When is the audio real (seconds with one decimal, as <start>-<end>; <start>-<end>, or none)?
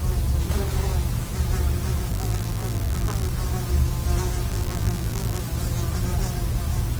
0.0-2.1; 3.3-4.5; 5.4-7.0